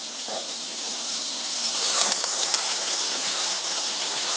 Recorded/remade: remade